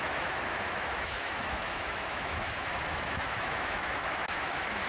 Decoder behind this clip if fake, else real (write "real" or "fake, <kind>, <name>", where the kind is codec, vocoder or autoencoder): fake, autoencoder, DAC-VAE